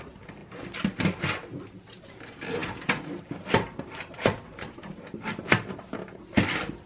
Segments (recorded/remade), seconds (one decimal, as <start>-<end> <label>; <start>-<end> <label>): 0.0-6.9 recorded